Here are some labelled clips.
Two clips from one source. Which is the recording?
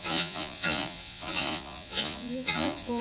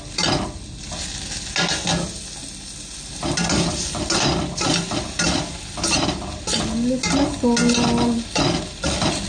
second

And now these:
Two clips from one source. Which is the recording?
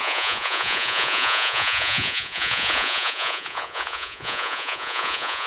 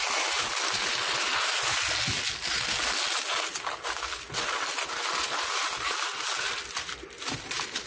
second